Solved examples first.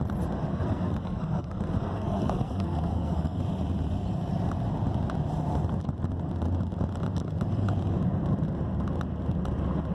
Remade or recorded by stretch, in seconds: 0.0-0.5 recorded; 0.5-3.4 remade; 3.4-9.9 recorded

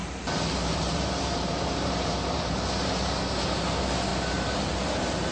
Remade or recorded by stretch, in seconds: 0.0-3.2 remade; 3.2-4.1 recorded; 4.1-5.3 remade

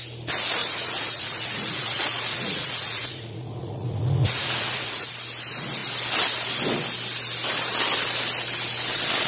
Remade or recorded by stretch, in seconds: 0.0-0.6 recorded; 0.6-5.1 remade; 5.1-9.3 recorded

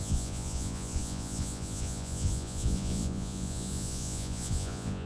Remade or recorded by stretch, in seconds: 0.0-5.1 remade

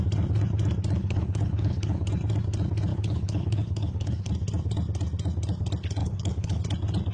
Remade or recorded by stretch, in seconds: 0.0-1.0 recorded; 1.0-2.1 remade; 2.1-2.9 recorded; 2.9-4.3 remade; 4.3-6.0 recorded; 6.0-6.6 remade; 6.6-7.1 recorded

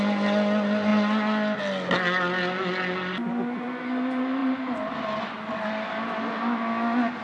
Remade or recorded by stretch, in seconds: 0.0-7.2 recorded